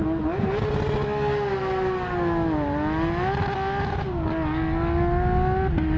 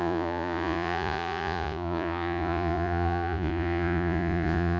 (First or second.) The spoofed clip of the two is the second